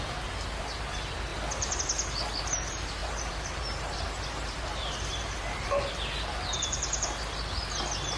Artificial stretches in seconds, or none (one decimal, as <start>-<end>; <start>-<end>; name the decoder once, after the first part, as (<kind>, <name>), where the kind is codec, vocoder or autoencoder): 3.0-5.8 (vocoder, BigVGAN v2)